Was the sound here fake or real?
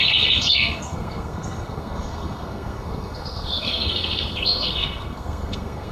fake